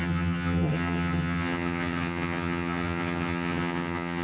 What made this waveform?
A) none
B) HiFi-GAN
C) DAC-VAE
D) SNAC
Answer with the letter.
B